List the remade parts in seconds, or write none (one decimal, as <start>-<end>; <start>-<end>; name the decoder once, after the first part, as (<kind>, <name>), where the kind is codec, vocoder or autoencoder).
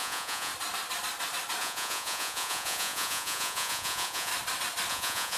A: 0.0-0.5 (vocoder, Vocos); 1.6-4.3; 4.9-5.4